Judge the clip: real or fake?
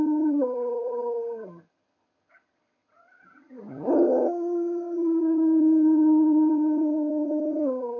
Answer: fake